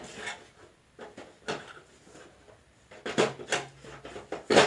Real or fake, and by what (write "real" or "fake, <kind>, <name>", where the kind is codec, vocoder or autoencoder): real